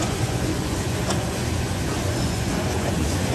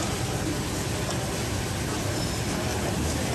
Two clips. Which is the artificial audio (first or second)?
first